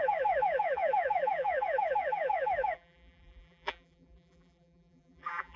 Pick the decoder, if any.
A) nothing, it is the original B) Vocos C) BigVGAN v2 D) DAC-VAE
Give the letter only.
C